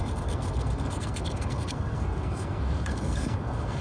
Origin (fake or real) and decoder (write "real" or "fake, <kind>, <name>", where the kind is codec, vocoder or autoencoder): fake, codec, SNAC